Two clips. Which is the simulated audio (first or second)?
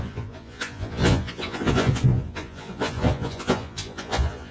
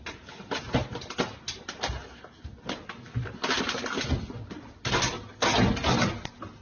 first